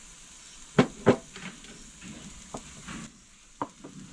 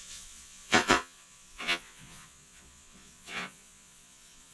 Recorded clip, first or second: first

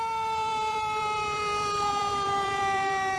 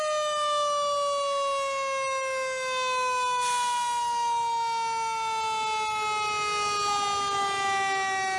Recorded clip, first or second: second